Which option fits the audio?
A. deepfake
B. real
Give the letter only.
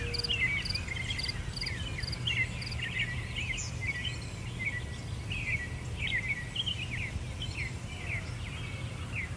B